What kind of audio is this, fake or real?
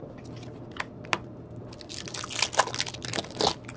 real